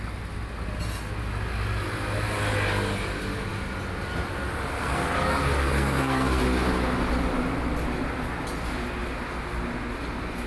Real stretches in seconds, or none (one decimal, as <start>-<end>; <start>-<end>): 0.0-4.7; 6.4-10.5